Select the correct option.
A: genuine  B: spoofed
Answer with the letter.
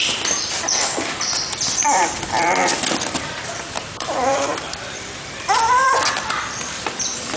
B